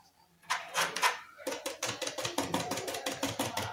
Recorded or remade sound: recorded